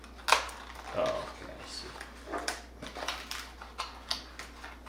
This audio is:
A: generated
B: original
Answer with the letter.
B